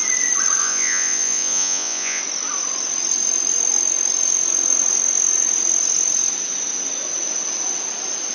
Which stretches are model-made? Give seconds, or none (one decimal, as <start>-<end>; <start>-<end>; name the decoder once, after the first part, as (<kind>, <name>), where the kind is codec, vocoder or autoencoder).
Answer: 0.6-2.2 (vocoder, Vocos)